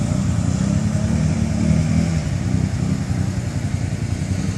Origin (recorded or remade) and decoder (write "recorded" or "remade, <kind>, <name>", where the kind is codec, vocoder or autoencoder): recorded